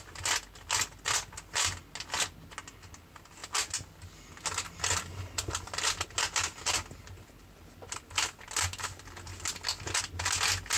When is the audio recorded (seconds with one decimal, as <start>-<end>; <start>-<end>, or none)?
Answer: 0.0-10.8